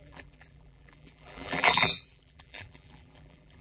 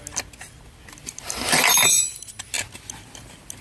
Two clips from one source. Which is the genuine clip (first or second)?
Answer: second